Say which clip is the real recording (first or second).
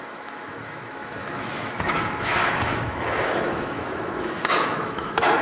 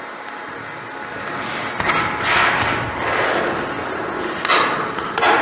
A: second